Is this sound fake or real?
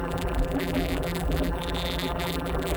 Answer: fake